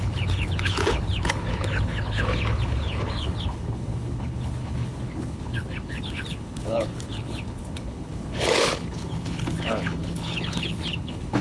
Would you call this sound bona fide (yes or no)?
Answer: no